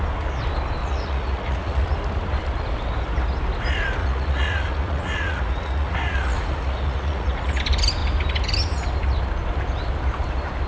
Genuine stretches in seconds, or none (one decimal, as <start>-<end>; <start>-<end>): 0.0-0.8; 1.9-4.0; 7.6-10.7